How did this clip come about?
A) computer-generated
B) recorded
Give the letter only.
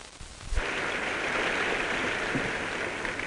B